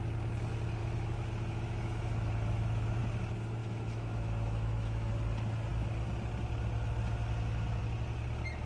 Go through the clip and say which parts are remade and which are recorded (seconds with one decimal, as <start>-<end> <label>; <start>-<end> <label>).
0.0-0.8 recorded; 0.8-3.0 remade; 3.0-3.6 recorded; 3.6-5.1 remade; 5.1-8.7 recorded